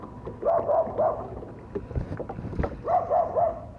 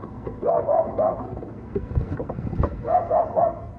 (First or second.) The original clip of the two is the first